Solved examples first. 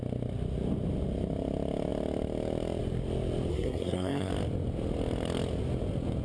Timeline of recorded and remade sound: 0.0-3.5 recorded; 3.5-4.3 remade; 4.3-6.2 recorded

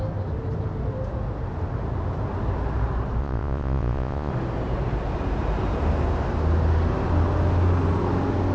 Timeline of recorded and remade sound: 0.0-3.2 recorded; 3.2-4.3 remade; 4.3-8.5 recorded

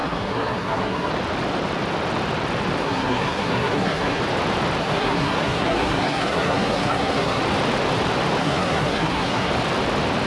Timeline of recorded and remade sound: 0.0-1.1 remade; 1.1-2.8 recorded; 2.8-4.2 remade; 4.2-4.8 recorded; 4.8-7.4 remade; 7.4-8.4 recorded; 8.4-9.5 remade; 9.5-10.3 recorded

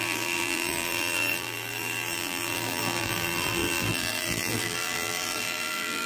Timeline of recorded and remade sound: 0.0-6.1 remade

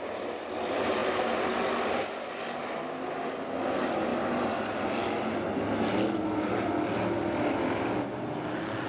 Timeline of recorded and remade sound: 0.0-8.9 recorded

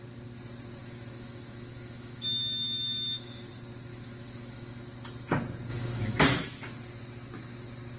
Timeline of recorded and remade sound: 0.0-0.8 recorded; 0.8-3.5 remade; 3.5-3.9 recorded; 3.9-4.8 remade; 4.8-5.7 recorded; 5.7-6.2 remade; 6.2-8.0 recorded